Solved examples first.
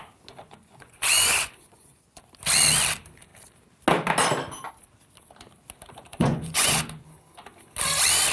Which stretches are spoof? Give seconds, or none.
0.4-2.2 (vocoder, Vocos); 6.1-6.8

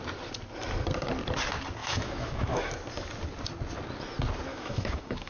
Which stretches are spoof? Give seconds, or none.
1.8-2.7 (autoencoder, DAC-VAE); 4.5-5.3

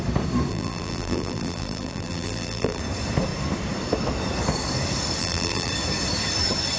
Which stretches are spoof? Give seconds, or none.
0.5-2.8 (vocoder, BigVGAN v2); 5.2-5.7

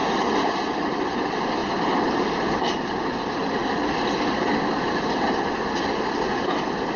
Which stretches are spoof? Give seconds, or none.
none

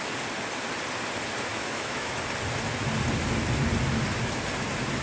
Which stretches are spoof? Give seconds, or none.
1.5-2.2 (autoencoder, DAC-VAE)